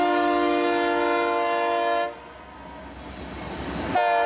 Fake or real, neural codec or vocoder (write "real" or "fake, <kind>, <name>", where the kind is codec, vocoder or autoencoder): real